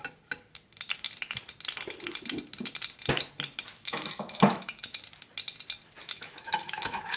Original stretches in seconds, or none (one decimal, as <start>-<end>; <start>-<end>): 0.0-3.7; 5.0-6.0